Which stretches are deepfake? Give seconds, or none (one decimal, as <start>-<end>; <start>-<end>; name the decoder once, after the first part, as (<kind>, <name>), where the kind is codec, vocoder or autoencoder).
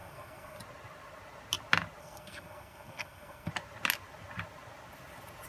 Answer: 0.0-0.6 (codec, SNAC); 2.0-3.5